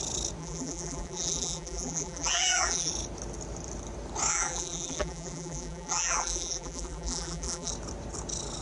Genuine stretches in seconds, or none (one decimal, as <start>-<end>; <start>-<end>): 0.0-0.4; 2.9-4.3; 7.7-8.6